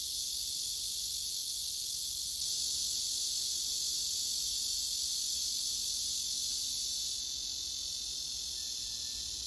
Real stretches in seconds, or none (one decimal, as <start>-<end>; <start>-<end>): 0.0-9.5